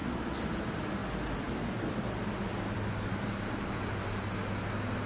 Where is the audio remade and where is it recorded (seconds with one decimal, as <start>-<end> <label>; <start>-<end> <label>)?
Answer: 0.0-5.1 recorded